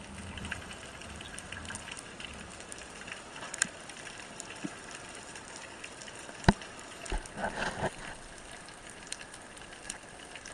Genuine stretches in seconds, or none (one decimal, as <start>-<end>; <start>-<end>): none